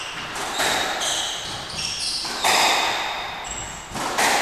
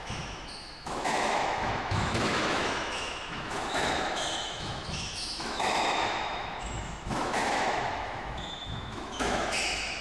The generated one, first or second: second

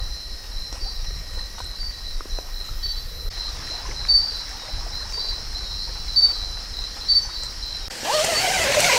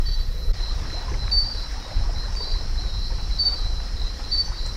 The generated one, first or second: second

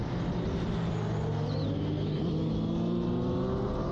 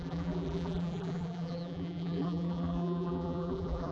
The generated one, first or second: second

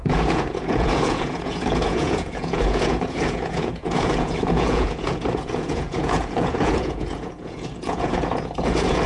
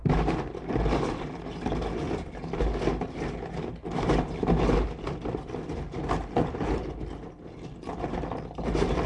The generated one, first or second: first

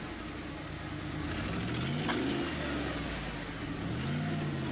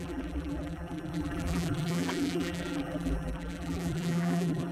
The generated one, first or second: second